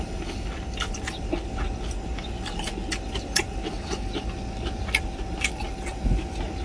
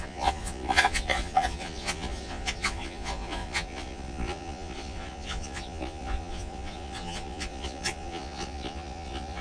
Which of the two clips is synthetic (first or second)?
second